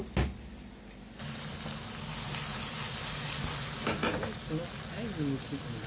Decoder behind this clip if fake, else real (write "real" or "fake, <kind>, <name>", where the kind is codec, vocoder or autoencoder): real